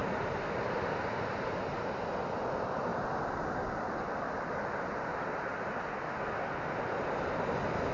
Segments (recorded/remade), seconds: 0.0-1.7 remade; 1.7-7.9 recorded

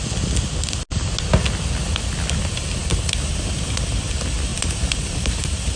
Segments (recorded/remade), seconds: 0.0-2.8 recorded; 2.8-4.0 remade; 4.0-4.5 recorded; 4.5-5.8 remade

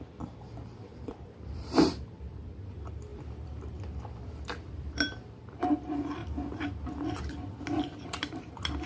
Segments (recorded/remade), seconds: 0.0-6.2 remade; 6.2-7.2 recorded; 7.2-8.9 remade

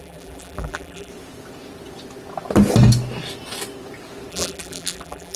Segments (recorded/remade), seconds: 0.0-1.1 remade; 1.1-4.3 recorded; 4.3-5.4 remade

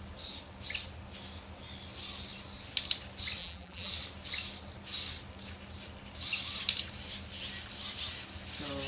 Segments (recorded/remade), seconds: 0.0-3.4 recorded; 3.4-3.9 remade; 3.9-8.9 recorded

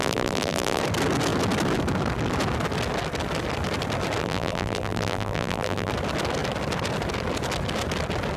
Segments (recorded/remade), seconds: 0.0-0.8 remade; 0.8-4.2 recorded; 4.2-5.9 remade; 5.9-8.4 recorded

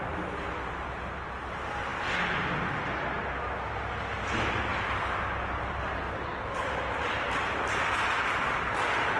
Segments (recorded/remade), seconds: 0.0-9.2 recorded

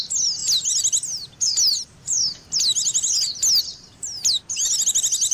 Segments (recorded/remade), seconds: 0.0-5.3 recorded